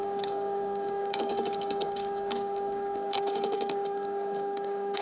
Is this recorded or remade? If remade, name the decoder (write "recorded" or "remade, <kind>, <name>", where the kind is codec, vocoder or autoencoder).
remade, codec, DAC